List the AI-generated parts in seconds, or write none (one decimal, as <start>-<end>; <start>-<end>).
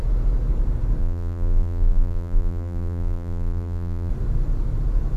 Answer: 1.0-4.1